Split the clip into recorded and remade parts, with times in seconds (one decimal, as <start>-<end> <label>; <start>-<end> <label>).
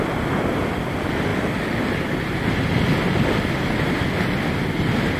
0.0-5.2 recorded